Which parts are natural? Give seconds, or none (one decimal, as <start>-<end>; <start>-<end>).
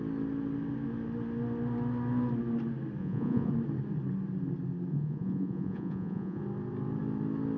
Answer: 0.0-3.0; 3.5-4.9; 6.4-7.6